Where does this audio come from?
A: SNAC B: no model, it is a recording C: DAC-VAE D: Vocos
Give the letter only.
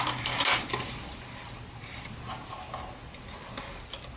B